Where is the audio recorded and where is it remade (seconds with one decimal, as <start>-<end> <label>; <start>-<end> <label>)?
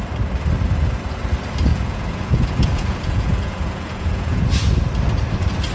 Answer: 0.0-1.7 recorded; 1.7-4.5 remade; 4.5-5.7 recorded